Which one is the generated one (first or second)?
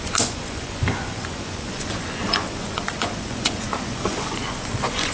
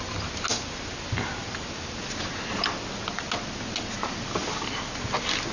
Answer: first